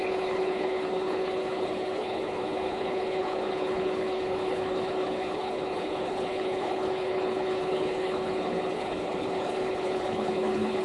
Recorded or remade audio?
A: remade